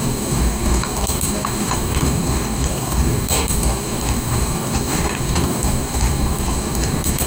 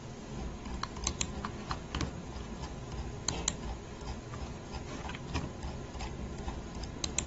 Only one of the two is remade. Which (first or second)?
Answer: first